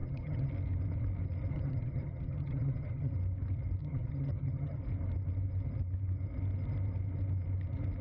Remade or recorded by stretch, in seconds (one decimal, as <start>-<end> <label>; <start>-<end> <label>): 0.0-0.5 remade; 0.5-1.5 recorded; 1.5-3.1 remade; 3.1-3.8 recorded; 3.8-4.8 remade; 4.8-8.0 recorded